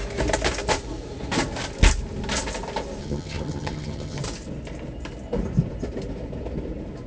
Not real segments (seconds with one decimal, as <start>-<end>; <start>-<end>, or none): 3.0-4.2